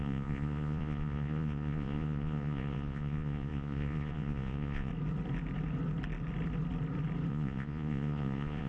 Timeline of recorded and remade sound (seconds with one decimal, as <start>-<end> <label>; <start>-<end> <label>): 0.0-4.9 remade; 4.9-7.3 recorded; 7.3-8.7 remade